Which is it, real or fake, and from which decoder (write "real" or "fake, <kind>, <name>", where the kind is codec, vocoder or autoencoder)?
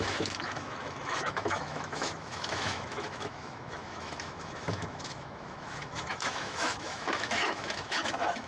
fake, autoencoder, DAC-VAE